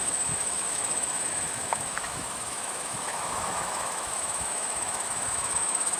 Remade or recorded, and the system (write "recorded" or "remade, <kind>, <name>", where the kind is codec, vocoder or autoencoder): remade, autoencoder, DAC-VAE